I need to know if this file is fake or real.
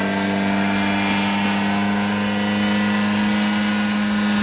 real